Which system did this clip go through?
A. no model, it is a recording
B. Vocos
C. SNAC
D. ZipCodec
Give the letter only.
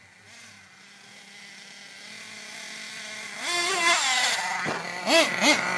A